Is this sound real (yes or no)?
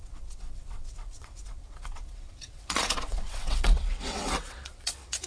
no